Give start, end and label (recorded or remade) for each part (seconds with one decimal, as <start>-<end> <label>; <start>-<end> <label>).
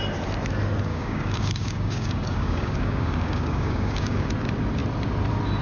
0.0-0.9 recorded; 0.9-4.3 remade; 4.3-5.6 recorded